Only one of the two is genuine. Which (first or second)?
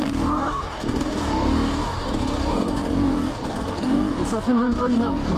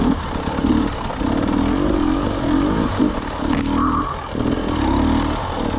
second